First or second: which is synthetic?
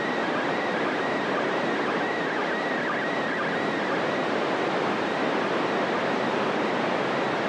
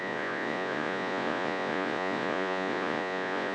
second